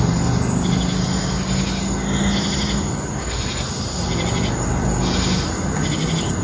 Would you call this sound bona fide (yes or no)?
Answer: yes